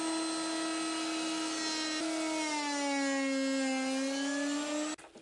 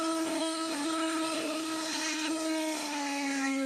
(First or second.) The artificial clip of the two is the second